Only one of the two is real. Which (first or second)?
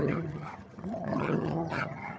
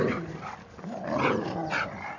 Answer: second